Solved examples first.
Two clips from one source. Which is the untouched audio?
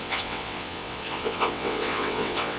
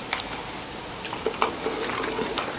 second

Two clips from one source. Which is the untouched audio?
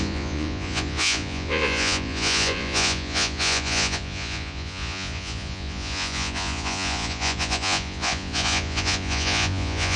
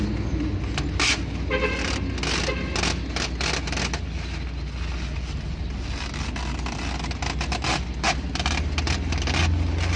second